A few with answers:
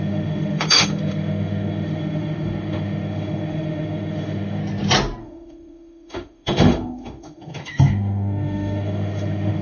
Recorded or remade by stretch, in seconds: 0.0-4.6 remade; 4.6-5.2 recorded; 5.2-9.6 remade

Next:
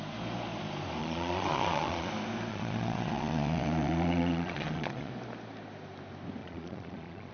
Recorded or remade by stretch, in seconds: 0.0-1.0 recorded; 1.0-2.1 remade; 2.1-2.5 recorded; 2.5-5.1 remade; 5.1-6.4 recorded; 6.4-7.3 remade

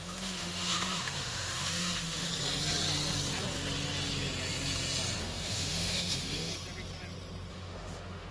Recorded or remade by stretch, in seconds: 0.0-2.3 remade; 2.3-5.2 recorded; 5.2-6.5 remade; 6.5-7.5 recorded; 7.5-8.3 remade

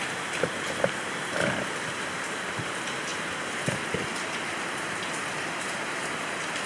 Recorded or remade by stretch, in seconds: 0.0-6.7 recorded

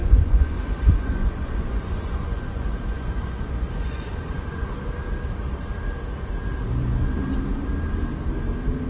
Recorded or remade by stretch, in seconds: 0.0-4.7 remade; 4.7-8.9 recorded

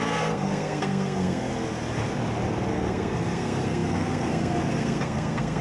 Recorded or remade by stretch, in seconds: 0.0-1.5 remade; 1.5-2.7 recorded; 2.7-5.6 remade

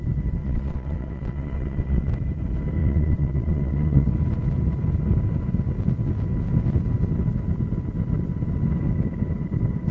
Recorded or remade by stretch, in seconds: 0.0-0.4 recorded; 0.4-2.1 remade; 2.1-2.8 recorded; 2.8-4.1 remade; 4.1-9.9 recorded

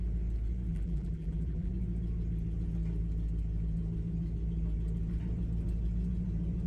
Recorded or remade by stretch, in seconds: 0.0-0.7 recorded; 0.7-1.7 remade; 1.7-6.7 recorded